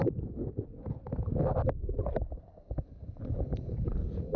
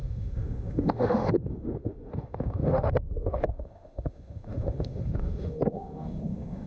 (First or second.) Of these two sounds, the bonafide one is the first